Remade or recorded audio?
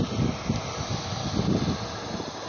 recorded